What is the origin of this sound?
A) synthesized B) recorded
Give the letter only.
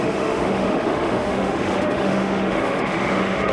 A